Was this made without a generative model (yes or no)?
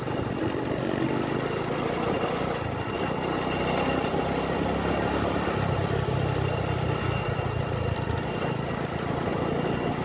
yes